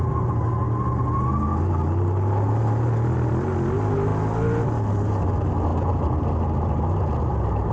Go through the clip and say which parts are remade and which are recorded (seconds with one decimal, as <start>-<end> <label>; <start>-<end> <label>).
0.0-7.7 recorded

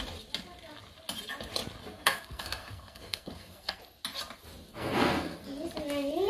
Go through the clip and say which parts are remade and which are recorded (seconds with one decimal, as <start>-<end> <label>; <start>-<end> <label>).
0.0-1.8 recorded; 1.8-3.8 remade; 3.8-4.7 recorded; 4.7-5.4 remade; 5.4-6.3 recorded

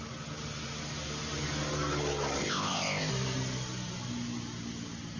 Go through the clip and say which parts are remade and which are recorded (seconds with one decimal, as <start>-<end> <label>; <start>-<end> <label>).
0.0-2.4 recorded; 2.4-3.1 remade; 3.1-5.2 recorded

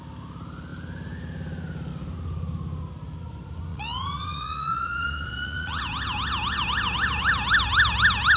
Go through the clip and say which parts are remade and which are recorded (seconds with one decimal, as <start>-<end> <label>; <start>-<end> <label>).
0.0-3.7 recorded; 3.7-5.8 remade; 5.8-8.4 recorded

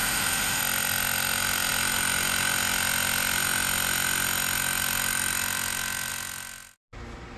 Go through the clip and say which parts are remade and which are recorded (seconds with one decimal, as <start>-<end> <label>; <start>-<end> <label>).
0.0-0.6 remade; 0.6-7.4 recorded

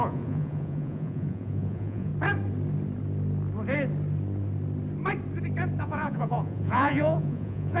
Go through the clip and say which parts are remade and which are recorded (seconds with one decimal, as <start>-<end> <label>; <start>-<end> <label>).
0.0-2.1 remade; 2.1-5.8 recorded; 5.8-7.8 remade

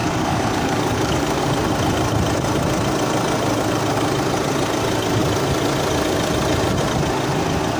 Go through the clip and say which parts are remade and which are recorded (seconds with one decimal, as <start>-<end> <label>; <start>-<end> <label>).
0.0-1.4 remade; 1.4-7.8 recorded